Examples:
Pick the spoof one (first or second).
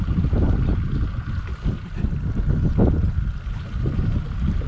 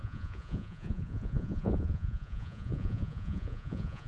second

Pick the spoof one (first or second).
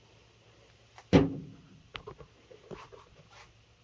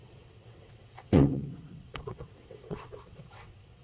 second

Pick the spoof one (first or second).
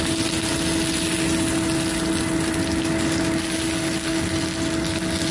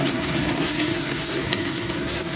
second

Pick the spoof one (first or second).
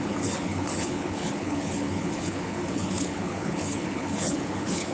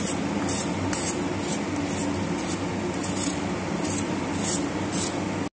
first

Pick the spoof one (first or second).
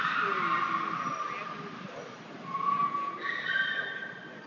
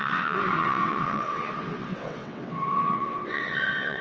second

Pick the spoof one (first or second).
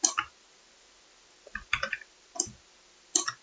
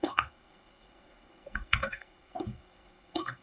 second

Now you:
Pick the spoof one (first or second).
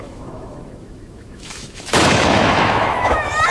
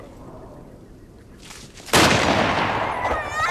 first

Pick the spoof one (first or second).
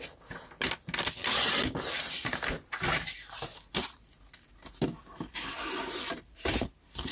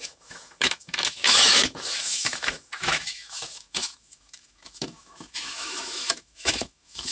second